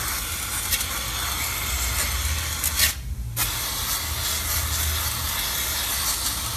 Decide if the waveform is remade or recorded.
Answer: recorded